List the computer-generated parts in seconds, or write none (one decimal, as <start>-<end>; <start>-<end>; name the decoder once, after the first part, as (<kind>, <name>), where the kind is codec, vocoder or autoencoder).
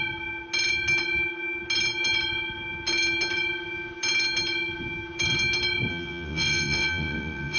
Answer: 5.9-7.6 (vocoder, WaveNeXt)